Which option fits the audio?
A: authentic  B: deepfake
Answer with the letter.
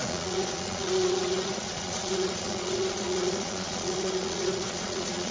B